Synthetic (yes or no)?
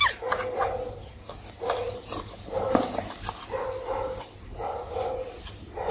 no